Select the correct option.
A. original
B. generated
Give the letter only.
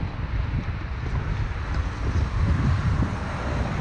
A